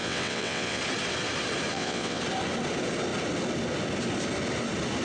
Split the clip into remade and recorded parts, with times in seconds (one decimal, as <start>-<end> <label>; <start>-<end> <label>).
0.0-0.8 remade; 0.8-1.7 recorded; 1.7-2.2 remade; 2.2-5.0 recorded

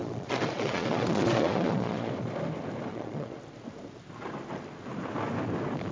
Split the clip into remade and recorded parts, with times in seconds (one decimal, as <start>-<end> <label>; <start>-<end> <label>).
0.0-2.1 remade; 2.1-2.9 recorded; 2.9-3.4 remade; 3.4-5.9 recorded